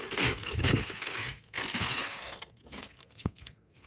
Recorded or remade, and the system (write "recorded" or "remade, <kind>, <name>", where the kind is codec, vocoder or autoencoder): remade, codec, SNAC